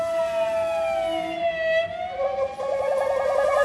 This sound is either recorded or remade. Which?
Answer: recorded